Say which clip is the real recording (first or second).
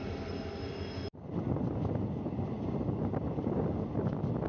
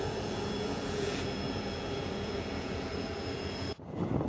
first